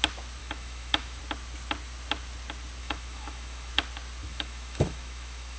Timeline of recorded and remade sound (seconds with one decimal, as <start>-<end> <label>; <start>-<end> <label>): 0.0-0.4 recorded; 0.4-1.2 remade; 1.2-2.8 recorded; 2.8-3.7 remade; 3.7-4.2 recorded; 4.2-5.6 remade